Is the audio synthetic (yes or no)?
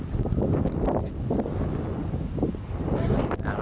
no